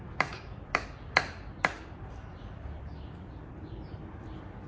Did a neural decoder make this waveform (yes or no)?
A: yes